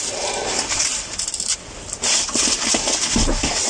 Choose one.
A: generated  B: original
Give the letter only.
B